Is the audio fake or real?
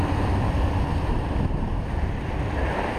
real